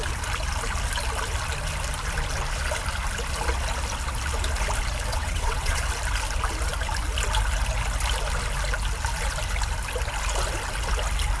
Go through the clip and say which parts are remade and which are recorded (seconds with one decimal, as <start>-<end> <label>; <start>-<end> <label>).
0.0-5.1 recorded; 5.1-5.8 remade; 5.8-11.4 recorded